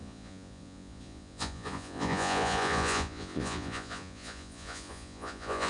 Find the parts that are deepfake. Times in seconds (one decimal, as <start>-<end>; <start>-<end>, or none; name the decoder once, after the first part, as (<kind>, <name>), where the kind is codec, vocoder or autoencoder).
0.0-5.7 (vocoder, Vocos)